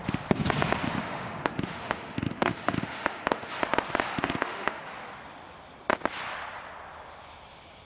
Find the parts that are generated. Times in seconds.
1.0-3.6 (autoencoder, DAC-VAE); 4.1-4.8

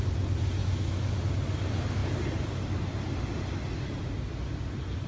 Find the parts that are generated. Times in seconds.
0.6-1.1 (autoencoder, DAC-VAE)

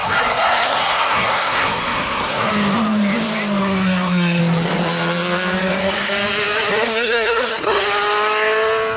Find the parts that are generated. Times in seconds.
0.0-2.5 (codec, SNAC); 3.6-4.4; 5.6-6.1; 6.7-7.8

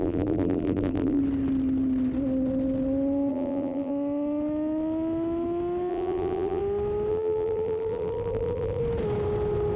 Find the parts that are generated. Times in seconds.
0.0-1.2 (vocoder, BigVGAN v2); 3.3-3.9; 5.9-6.6; 7.1-8.8

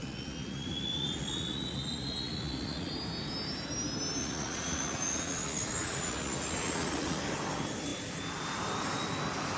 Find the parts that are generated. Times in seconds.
0.0-2.9 (vocoder, Vocos); 4.2-7.2

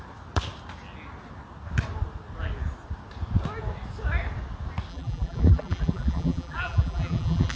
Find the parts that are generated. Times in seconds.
4.9-7.6 (vocoder, BigVGAN v2)

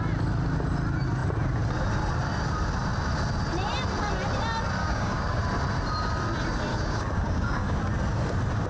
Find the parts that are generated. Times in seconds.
4.8-5.4 (codec, DAC); 6.7-7.8